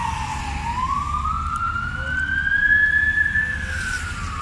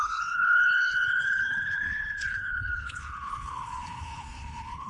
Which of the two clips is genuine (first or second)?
first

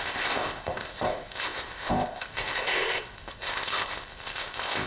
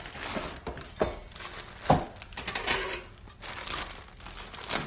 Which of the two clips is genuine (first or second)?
second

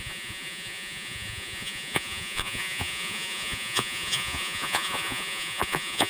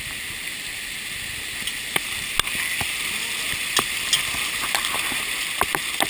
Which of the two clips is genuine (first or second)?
second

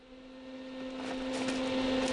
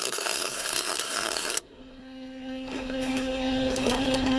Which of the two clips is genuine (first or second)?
first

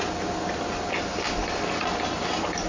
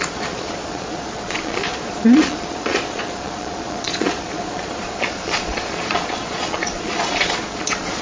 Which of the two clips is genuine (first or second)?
first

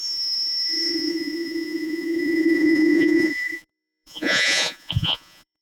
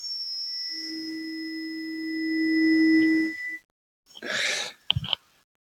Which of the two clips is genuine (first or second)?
second